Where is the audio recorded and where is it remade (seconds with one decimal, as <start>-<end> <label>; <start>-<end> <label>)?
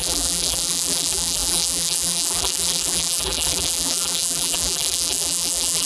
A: 0.0-5.9 remade